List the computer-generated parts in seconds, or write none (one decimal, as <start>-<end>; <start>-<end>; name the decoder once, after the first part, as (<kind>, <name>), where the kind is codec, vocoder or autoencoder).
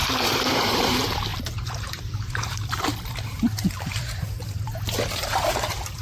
0.5-6.0 (vocoder, BigVGAN v2)